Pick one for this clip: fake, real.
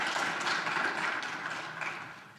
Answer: real